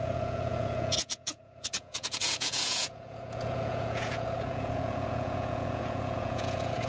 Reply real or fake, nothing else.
fake